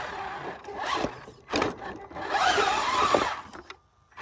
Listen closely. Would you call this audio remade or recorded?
recorded